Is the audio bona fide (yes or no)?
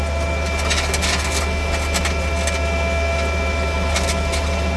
yes